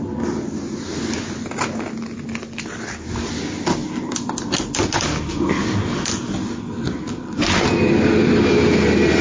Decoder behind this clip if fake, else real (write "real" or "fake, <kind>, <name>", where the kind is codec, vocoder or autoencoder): real